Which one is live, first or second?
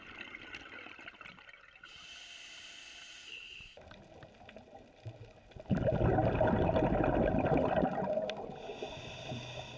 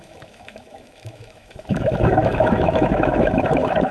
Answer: first